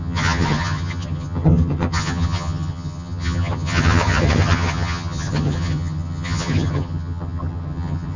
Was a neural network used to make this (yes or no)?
yes